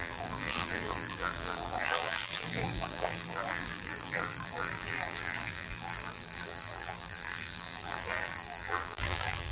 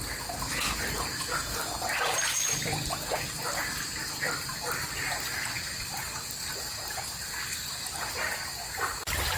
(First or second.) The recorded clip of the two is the second